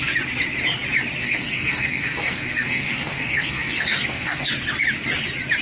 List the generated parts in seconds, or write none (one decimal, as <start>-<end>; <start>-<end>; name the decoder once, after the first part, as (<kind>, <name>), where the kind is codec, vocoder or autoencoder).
1.2-4.5 (codec, SNAC)